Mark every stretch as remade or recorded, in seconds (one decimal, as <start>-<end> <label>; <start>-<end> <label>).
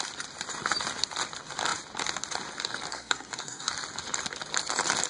0.0-2.9 recorded; 2.9-3.7 remade; 3.7-5.1 recorded